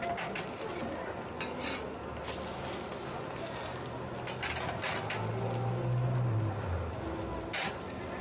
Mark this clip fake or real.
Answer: real